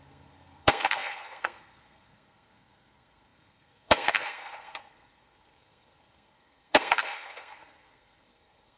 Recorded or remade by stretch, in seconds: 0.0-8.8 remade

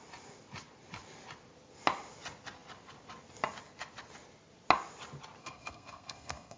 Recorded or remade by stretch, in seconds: 0.0-5.4 recorded; 5.4-6.6 remade

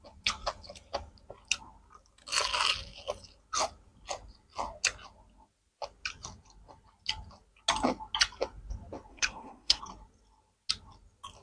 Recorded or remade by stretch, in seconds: 0.0-9.1 recorded; 9.1-9.8 remade; 9.8-11.4 recorded